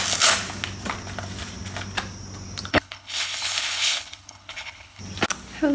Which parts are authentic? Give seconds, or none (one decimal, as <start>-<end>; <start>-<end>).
0.0-2.7; 5.0-5.7

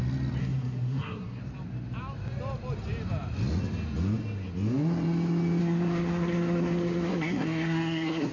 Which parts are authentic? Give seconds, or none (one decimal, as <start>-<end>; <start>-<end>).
0.0-0.4; 1.4-5.6